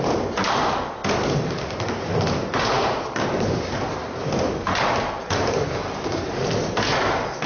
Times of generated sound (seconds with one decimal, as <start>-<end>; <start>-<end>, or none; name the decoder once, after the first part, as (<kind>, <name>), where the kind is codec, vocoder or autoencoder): none